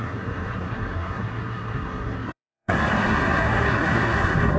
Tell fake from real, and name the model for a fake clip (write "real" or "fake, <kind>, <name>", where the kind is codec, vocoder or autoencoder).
fake, codec, SNAC